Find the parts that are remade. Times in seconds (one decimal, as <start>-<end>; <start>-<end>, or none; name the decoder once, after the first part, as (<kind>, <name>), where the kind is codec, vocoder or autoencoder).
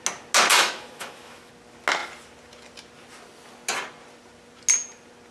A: 0.5-1.5 (autoencoder, DAC-VAE)